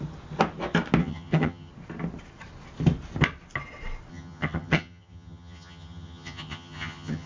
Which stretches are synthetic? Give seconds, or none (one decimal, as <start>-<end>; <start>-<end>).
1.0-1.7; 4.1-7.3